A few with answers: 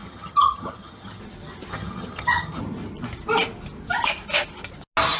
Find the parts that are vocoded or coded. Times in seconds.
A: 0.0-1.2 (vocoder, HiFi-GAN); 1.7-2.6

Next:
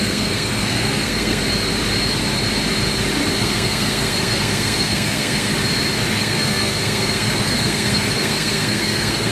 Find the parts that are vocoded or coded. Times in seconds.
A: 0.0-1.4 (codec, SNAC); 3.4-5.5; 6.1-9.3

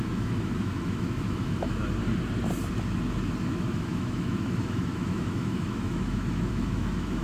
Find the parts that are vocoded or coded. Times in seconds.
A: 0.0-1.8 (autoencoder, DAC-VAE); 3.4-7.2

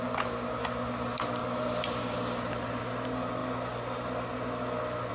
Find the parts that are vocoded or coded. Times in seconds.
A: 1.4-2.8 (vocoder, BigVGAN v2)

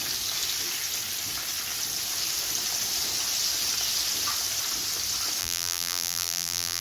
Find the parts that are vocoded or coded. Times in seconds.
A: 5.4-6.8 (vocoder, BigVGAN v2)

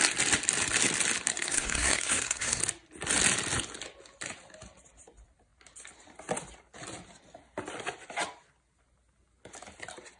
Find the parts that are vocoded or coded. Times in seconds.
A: 1.3-2.6 (codec, SNAC)

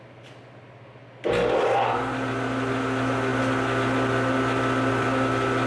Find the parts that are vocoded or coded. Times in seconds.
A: none

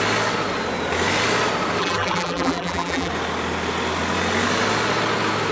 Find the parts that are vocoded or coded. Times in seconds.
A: 1.8-3.1 (vocoder, BigVGAN v2)